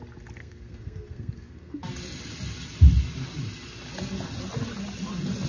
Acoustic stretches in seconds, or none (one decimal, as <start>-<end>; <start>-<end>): 0.0-0.4; 1.8-5.5